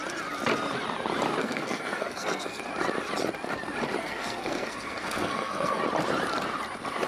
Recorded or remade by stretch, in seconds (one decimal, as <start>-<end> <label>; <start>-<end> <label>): 0.0-1.4 recorded; 1.4-2.6 remade; 2.6-4.0 recorded; 4.0-5.8 remade; 5.8-7.1 recorded